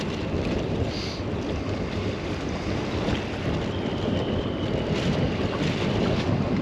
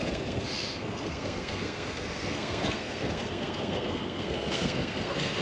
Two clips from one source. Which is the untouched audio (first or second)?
first